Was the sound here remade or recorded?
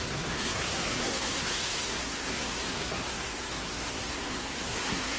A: remade